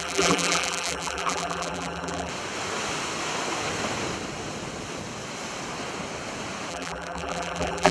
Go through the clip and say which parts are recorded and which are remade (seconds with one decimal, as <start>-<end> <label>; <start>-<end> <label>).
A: 0.0-2.3 remade; 2.3-6.7 recorded; 6.7-7.9 remade